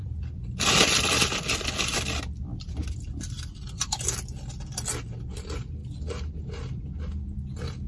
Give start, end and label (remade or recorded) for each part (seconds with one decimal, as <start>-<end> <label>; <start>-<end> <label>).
0.0-3.9 remade; 3.9-7.9 recorded